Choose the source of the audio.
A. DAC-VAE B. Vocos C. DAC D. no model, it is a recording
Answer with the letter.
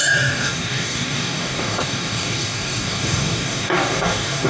C